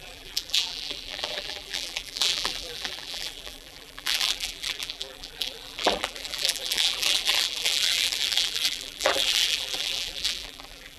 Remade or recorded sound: remade